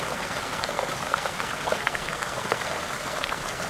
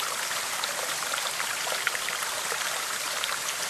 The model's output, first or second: first